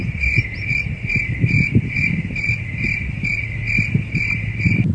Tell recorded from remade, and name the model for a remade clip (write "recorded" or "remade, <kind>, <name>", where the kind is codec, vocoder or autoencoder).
recorded